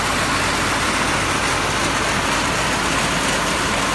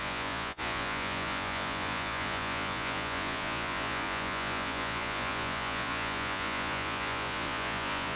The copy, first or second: second